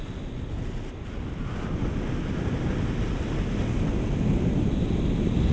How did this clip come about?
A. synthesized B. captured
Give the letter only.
B